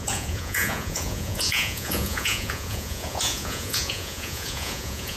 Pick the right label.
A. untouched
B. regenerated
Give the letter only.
B